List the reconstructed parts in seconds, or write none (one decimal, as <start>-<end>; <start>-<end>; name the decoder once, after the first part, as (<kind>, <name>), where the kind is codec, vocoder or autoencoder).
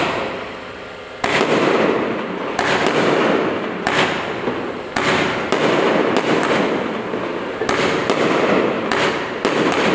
none